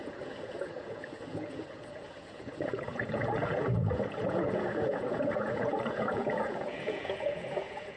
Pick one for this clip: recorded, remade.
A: remade